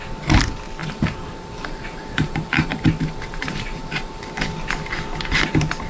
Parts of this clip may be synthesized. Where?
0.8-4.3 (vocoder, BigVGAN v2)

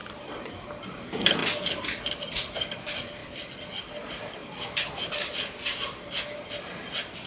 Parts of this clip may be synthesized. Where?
1.4-2.0 (vocoder, BigVGAN v2); 3.2-3.8; 4.4-4.9

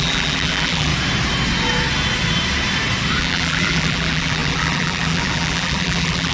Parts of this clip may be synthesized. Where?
0.0-0.9 (vocoder, BigVGAN v2); 3.2-6.3

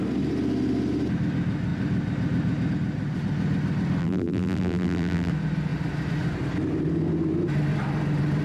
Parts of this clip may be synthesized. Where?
4.0-5.3 (vocoder, BigVGAN v2)

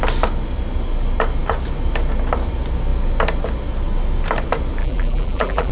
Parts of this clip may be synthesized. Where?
4.8-5.7 (vocoder, BigVGAN v2)

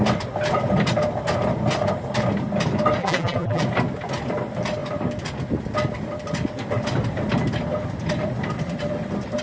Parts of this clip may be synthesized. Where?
3.0-3.6 (vocoder, BigVGAN v2)

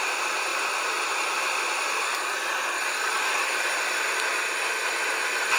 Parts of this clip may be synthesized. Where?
none